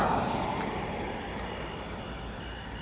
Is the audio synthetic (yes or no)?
no